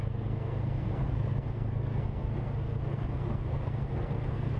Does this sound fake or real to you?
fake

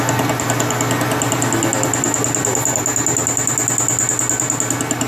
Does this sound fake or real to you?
real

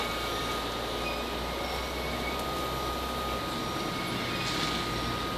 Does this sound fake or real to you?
real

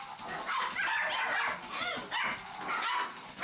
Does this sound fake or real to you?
real